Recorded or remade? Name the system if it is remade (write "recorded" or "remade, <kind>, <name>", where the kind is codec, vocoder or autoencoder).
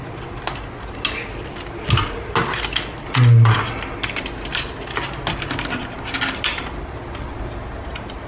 recorded